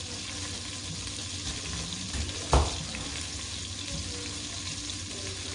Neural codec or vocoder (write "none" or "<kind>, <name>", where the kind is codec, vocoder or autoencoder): none